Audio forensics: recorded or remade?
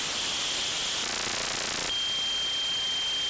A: recorded